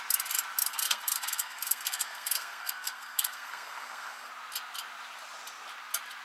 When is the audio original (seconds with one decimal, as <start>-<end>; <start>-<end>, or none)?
0.0-0.7; 4.3-6.2